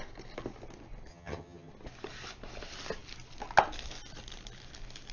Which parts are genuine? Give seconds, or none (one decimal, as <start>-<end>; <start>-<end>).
0.0-1.1; 1.7-5.1